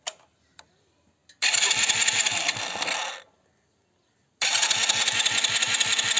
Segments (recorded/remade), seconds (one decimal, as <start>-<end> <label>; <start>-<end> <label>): 0.0-6.2 recorded